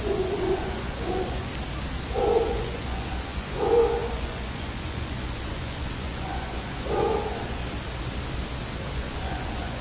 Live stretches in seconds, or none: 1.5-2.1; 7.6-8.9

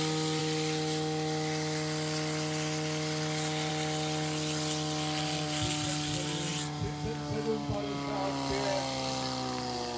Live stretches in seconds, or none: 0.0-10.0

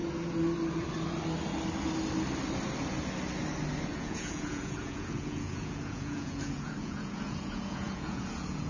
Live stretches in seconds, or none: 0.0-3.9

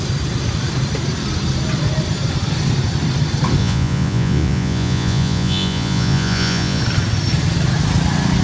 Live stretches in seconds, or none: 0.0-3.6; 6.8-8.4

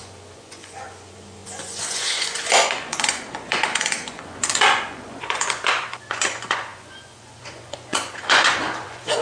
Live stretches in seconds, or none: none